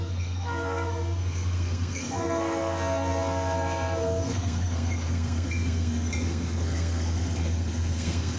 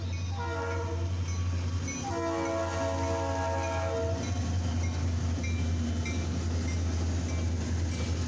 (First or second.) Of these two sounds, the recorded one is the second